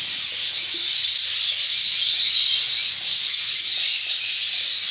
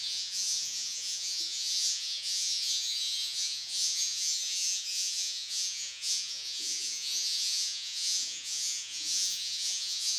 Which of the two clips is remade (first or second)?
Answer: second